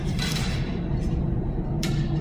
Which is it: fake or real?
fake